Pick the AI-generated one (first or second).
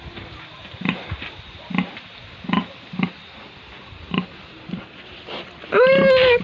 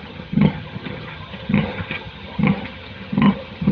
second